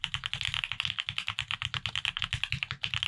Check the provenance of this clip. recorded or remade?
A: recorded